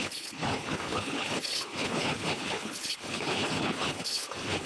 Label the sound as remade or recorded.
remade